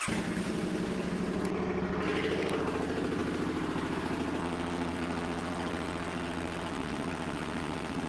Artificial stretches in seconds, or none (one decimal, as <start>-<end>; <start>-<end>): 4.4-8.1